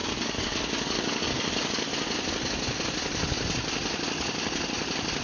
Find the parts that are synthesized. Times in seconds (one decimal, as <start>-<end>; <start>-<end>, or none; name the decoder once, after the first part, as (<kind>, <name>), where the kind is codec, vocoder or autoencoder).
0.0-1.9 (codec, DAC)